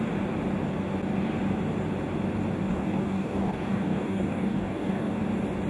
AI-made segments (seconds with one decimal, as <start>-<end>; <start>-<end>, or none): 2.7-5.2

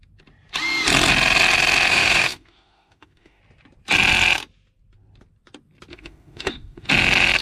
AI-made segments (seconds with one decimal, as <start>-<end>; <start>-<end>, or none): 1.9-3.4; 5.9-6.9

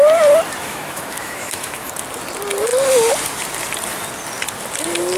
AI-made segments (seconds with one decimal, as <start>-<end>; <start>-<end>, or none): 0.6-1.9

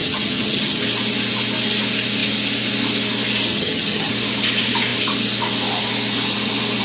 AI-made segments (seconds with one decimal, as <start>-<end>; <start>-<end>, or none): 0.0-0.8; 3.5-4.1

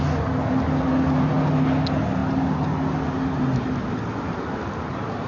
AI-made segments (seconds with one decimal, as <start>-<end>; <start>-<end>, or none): none

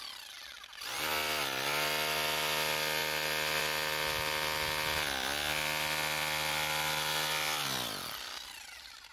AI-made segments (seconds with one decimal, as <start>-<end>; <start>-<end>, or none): none